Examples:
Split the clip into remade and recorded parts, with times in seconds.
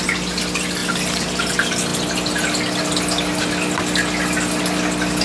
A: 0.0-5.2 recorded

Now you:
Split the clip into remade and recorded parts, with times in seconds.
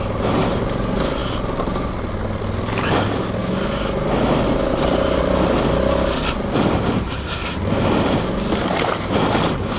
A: 0.0-9.8 recorded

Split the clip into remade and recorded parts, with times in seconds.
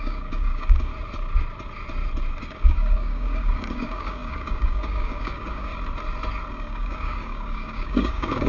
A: 0.0-0.9 remade; 0.9-2.4 recorded; 2.4-5.7 remade; 5.7-6.5 recorded; 6.5-8.5 remade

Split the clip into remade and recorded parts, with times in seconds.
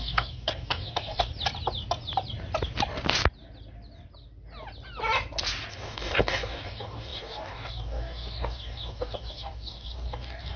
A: 0.0-1.3 remade; 1.3-5.7 recorded; 5.7-10.6 remade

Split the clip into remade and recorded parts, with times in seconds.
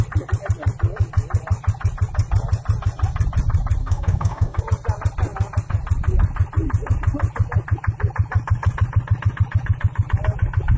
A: 0.0-3.8 recorded; 3.8-4.6 remade; 4.6-10.8 recorded